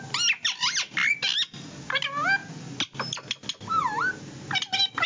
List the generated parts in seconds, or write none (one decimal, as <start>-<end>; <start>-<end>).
none